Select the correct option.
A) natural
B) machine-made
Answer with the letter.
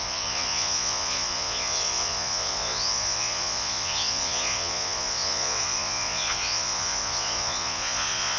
B